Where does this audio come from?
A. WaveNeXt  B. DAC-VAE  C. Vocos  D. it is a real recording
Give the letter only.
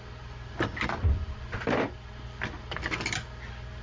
D